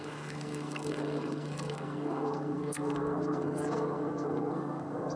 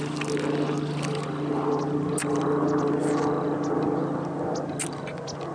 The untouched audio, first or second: second